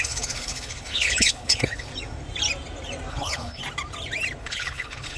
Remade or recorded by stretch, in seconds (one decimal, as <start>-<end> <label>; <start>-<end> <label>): 0.0-1.9 remade; 1.9-3.1 recorded; 3.1-3.6 remade; 3.6-4.4 recorded; 4.4-5.2 remade